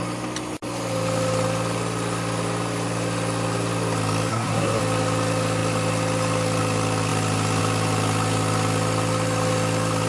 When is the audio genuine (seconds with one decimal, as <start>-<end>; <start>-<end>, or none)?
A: 0.0-4.3; 4.8-10.1